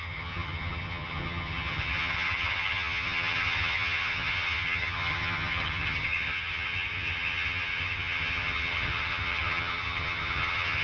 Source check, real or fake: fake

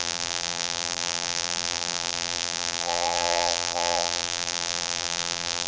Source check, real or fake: fake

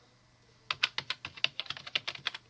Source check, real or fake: real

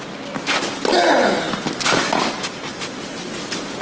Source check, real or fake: real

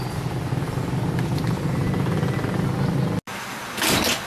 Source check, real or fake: real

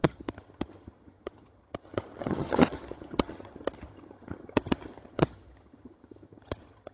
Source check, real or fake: fake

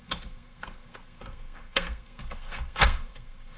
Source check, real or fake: fake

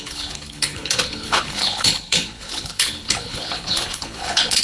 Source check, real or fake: fake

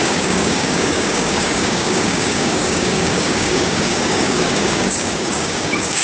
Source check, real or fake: fake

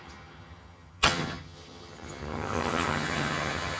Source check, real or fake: fake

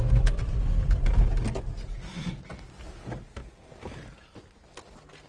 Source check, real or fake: real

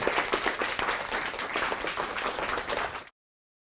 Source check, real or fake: real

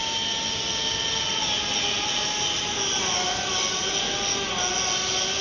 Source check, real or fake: real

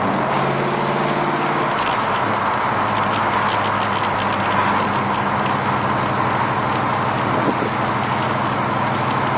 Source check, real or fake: real